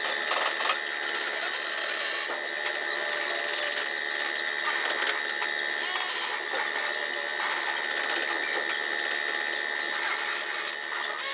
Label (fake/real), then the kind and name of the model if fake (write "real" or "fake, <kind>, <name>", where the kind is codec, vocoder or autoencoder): real